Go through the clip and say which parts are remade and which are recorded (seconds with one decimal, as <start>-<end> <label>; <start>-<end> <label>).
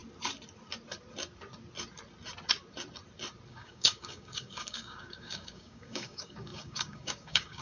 0.0-3.5 recorded; 3.5-7.6 remade